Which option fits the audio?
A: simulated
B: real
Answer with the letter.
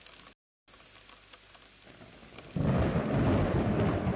B